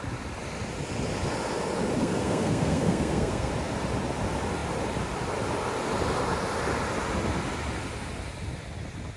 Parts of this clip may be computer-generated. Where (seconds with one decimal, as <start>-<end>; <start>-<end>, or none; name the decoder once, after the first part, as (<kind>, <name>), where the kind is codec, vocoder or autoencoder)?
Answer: 2.0-3.5 (codec, SNAC)